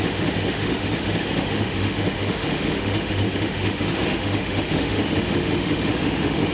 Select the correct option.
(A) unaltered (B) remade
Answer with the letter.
B